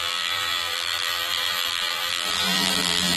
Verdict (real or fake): fake